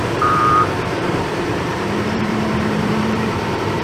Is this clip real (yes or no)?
no